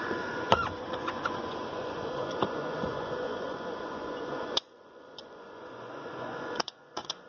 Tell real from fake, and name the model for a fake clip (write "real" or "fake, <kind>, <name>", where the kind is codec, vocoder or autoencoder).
fake, vocoder, Vocos